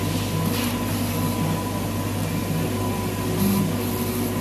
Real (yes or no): yes